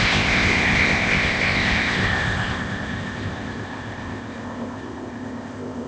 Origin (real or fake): fake